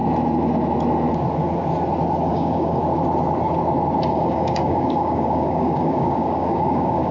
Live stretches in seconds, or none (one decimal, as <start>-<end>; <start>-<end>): 0.0-2.3; 2.8-4.1